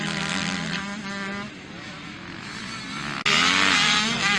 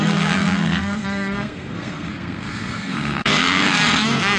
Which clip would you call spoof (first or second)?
second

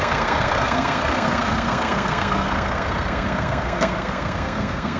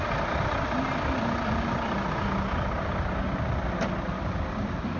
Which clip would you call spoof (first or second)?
first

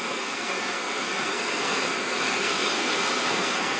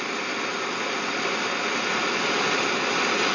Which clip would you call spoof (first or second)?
first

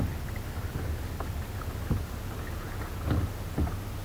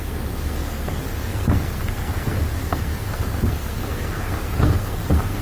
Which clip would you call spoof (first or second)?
second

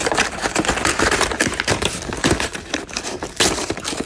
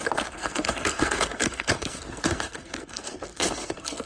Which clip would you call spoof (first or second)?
second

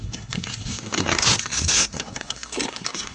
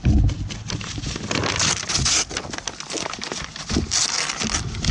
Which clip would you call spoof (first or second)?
first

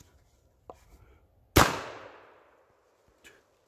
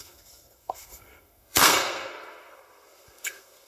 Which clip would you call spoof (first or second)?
second